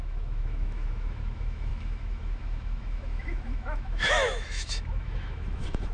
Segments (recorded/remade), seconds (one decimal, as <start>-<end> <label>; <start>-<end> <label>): 0.0-5.9 remade